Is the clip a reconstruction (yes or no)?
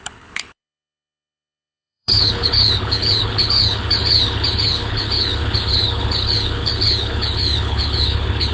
yes